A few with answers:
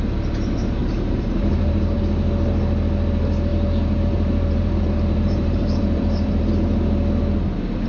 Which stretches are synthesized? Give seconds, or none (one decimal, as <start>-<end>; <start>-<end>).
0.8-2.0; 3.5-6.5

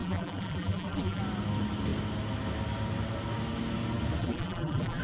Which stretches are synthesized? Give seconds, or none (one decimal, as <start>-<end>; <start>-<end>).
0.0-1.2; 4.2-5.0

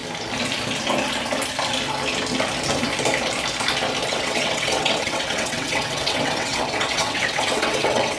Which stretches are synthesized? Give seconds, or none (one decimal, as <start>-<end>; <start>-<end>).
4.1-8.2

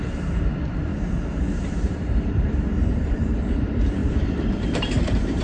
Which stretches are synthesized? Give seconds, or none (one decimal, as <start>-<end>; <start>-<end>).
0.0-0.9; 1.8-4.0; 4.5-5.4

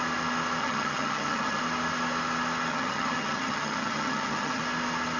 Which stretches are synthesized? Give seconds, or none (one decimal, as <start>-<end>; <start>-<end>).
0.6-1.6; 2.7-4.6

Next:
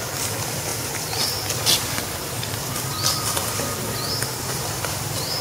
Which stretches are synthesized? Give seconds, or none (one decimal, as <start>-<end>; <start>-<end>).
none

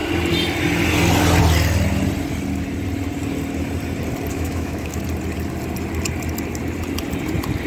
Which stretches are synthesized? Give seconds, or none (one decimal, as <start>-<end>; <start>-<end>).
4.3-5.0